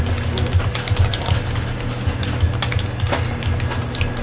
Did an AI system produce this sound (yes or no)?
no